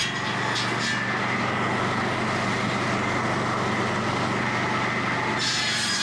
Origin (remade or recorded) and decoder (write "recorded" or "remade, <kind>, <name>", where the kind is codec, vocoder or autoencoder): recorded